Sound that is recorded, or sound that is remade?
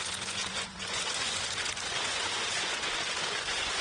remade